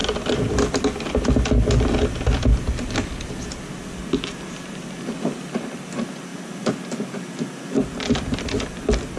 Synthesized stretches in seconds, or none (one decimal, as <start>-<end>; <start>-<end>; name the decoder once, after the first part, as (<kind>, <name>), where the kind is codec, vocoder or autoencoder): none